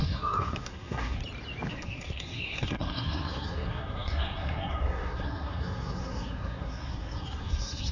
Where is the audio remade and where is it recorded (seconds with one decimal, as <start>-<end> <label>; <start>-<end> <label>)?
0.0-1.2 remade; 1.2-1.7 recorded; 1.7-7.9 remade